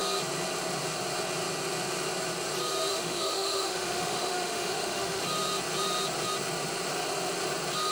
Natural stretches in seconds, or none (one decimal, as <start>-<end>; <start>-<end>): 0.0-2.9; 5.2-7.9